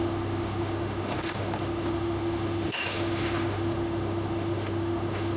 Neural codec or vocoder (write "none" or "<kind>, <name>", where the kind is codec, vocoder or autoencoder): autoencoder, DAC-VAE